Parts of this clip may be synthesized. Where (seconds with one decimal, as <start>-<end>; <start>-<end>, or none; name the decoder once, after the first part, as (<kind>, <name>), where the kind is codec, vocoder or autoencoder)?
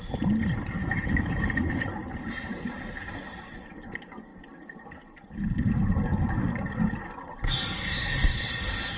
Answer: 0.8-1.9 (autoencoder, DAC-VAE)